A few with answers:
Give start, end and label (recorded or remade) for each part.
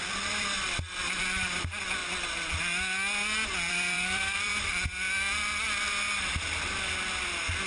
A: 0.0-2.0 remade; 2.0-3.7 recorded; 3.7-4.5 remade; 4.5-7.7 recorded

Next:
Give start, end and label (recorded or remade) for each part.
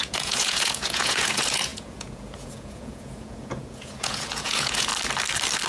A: 0.0-4.9 remade; 4.9-5.7 recorded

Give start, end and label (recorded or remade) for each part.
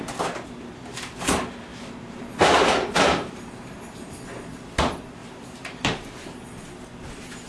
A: 0.0-1.7 recorded; 1.7-4.1 remade; 4.1-5.2 recorded; 5.2-6.6 remade; 6.6-7.5 recorded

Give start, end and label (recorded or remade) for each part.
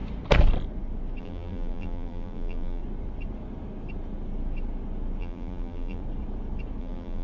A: 0.0-1.2 recorded; 1.2-2.8 remade; 2.8-5.2 recorded; 5.2-6.0 remade; 6.0-6.8 recorded; 6.8-7.2 remade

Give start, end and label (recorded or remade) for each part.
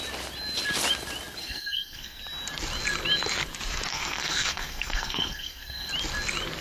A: 0.0-1.4 recorded; 1.4-2.2 remade; 2.2-3.9 recorded; 3.9-5.9 remade; 5.9-6.6 recorded